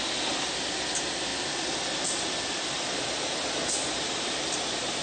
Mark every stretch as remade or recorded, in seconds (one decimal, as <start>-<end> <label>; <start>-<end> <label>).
0.0-5.0 recorded